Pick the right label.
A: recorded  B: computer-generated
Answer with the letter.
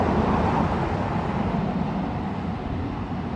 B